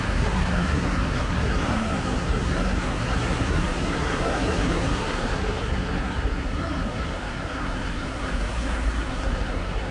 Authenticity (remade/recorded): remade